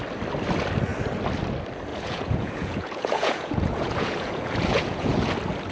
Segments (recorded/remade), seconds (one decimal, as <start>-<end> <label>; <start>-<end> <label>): 0.0-1.9 recorded; 1.9-5.3 remade; 5.3-5.7 recorded